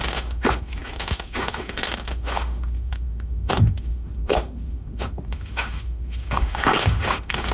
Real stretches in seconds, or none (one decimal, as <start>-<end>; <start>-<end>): none

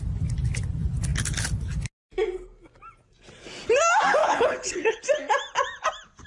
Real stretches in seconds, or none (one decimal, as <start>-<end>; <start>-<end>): 0.0-4.2; 5.0-6.3

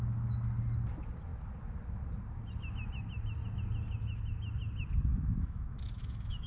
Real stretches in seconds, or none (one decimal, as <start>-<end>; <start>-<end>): 0.0-5.1

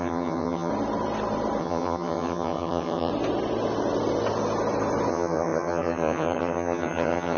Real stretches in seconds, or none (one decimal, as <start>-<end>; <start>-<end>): 0.7-1.6; 3.1-5.1

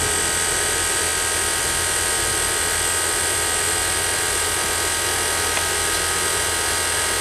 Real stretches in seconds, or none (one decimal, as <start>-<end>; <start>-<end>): 0.0-7.2